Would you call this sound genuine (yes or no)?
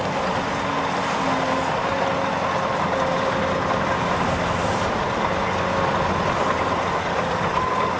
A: yes